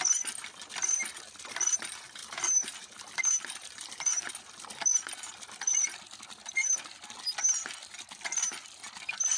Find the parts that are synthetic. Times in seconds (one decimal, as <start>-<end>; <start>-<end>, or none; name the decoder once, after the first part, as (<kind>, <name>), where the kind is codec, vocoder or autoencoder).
2.2-4.3 (vocoder, BigVGAN v2)